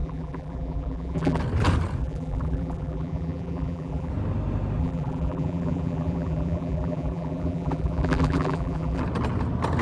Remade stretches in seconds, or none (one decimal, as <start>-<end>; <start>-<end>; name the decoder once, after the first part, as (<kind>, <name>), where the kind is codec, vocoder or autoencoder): 0.0-1.4 (vocoder, BigVGAN v2); 2.0-4.1; 4.8-9.0